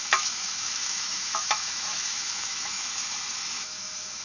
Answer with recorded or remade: remade